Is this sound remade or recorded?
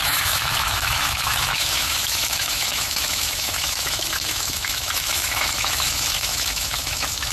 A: remade